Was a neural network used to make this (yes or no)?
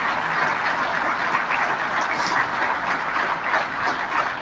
no